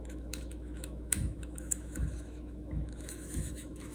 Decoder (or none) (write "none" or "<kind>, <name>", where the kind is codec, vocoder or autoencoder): autoencoder, DAC-VAE